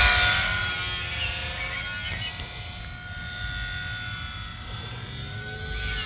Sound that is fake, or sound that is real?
real